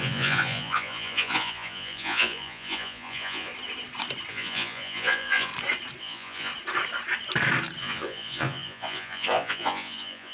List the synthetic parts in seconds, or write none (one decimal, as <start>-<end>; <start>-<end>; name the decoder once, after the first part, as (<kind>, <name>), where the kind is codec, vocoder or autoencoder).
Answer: 0.0-3.5 (vocoder, Vocos); 4.3-5.5; 6.0-6.5; 7.8-10.3